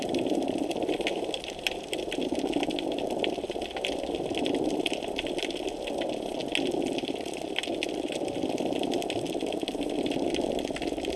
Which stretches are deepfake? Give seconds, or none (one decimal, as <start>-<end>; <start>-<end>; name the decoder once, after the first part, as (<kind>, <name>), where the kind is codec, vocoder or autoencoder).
0.7-2.2 (vocoder, BigVGAN v2)